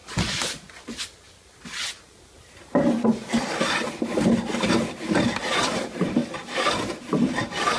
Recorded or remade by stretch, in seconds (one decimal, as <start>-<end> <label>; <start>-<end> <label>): 0.0-2.0 recorded; 2.0-6.2 remade; 6.2-7.0 recorded; 7.0-7.8 remade